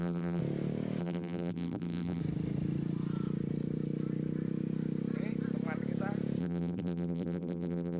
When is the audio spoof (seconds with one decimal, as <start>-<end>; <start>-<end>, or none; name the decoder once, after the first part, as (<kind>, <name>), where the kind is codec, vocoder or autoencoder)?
0.0-0.4 (vocoder, BigVGAN v2); 1.0-2.2; 6.4-8.0